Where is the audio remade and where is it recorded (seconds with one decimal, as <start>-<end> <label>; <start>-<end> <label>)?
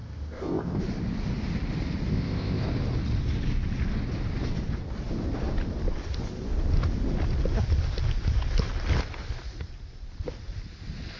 0.0-0.8 remade; 0.8-2.1 recorded; 2.1-2.6 remade; 2.6-11.2 recorded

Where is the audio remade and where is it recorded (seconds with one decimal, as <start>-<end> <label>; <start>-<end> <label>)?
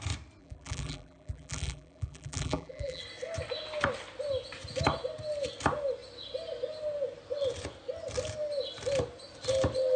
0.0-0.4 recorded; 0.4-3.0 remade; 3.0-10.0 recorded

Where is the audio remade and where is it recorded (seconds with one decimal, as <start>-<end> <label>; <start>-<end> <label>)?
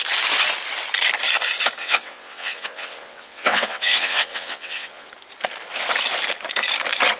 0.0-1.8 recorded; 1.8-5.1 remade; 5.1-7.2 recorded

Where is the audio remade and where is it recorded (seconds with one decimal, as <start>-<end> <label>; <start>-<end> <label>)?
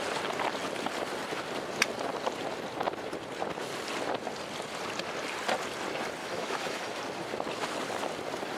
0.0-6.2 recorded; 6.2-7.0 remade; 7.0-8.6 recorded